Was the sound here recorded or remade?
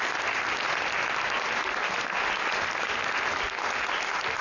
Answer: recorded